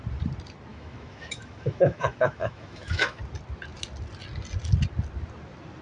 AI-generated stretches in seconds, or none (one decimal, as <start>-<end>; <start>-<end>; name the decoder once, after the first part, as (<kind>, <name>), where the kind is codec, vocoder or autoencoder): 0.7-3.2 (autoencoder, DAC-VAE)